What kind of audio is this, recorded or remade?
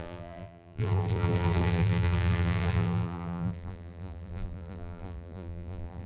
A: remade